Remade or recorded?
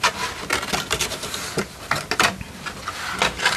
recorded